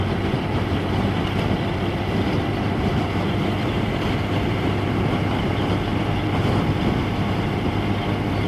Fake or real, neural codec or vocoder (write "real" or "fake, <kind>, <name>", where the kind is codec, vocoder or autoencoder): fake, vocoder, BigVGAN v2